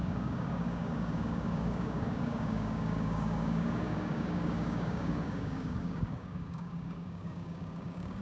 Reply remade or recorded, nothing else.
remade